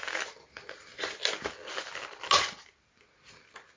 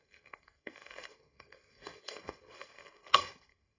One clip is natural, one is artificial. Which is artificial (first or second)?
second